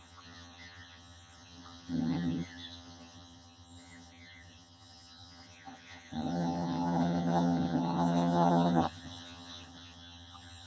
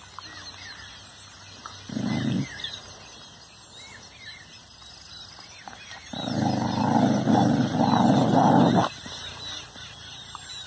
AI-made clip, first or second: first